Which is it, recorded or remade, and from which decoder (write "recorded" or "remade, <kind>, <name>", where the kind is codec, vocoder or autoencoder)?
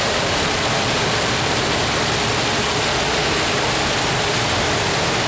recorded